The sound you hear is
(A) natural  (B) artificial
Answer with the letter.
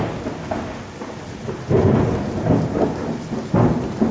A